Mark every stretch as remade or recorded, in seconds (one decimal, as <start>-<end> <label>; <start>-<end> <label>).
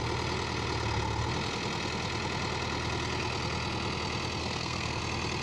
0.0-4.4 recorded; 4.4-5.0 remade; 5.0-5.4 recorded